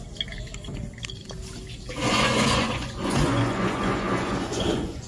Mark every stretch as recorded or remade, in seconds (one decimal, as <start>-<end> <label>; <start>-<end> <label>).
0.0-2.0 recorded; 2.0-5.1 remade